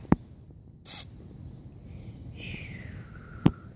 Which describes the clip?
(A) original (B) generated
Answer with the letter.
A